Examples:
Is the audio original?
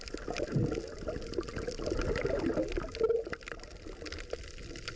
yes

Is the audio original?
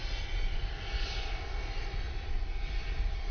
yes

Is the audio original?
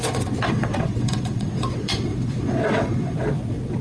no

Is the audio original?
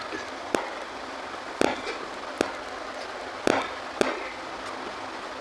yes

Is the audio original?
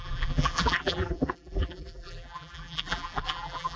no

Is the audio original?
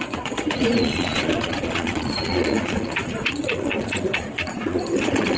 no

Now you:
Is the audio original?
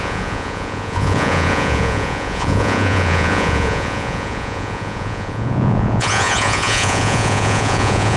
no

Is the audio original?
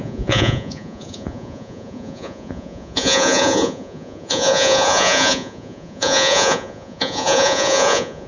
no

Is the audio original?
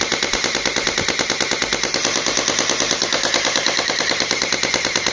yes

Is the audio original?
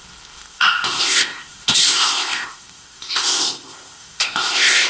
no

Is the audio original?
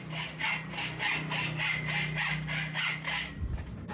yes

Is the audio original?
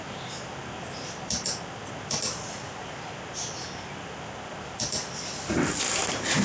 yes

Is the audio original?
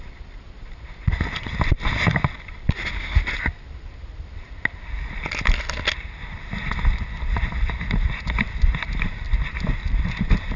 yes